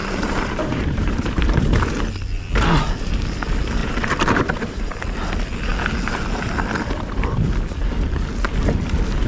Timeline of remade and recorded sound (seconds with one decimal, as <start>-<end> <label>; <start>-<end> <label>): 0.0-1.6 remade; 1.6-3.8 recorded; 3.8-5.0 remade; 5.0-9.3 recorded